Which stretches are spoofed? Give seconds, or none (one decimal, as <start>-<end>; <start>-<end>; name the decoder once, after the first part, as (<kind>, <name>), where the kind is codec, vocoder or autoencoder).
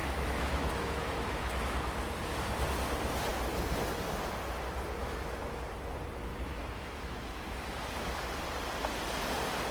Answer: 0.0-2.1 (autoencoder, DAC-VAE); 5.0-5.6; 6.3-8.1